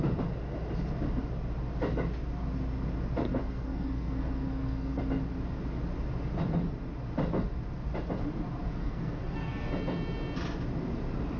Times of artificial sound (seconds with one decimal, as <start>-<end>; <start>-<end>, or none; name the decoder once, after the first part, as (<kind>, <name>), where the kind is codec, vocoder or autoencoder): 3.3-5.0 (codec, SNAC); 8.8-9.7